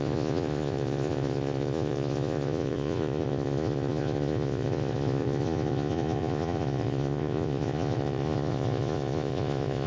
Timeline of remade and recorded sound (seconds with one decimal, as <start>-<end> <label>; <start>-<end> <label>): 0.0-9.9 remade